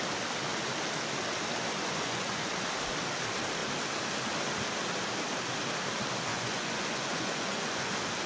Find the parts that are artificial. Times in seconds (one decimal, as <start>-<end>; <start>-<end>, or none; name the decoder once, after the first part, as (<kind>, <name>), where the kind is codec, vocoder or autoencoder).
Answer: 1.8-2.5 (vocoder, Vocos); 6.3-7.9